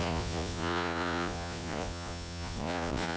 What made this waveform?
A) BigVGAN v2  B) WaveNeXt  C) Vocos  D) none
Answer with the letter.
C